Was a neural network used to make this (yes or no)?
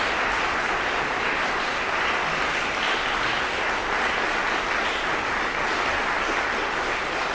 no